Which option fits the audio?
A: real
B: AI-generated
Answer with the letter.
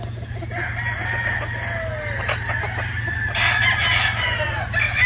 A